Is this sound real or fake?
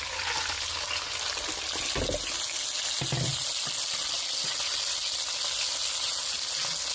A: real